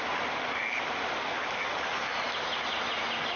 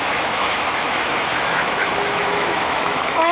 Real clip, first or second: first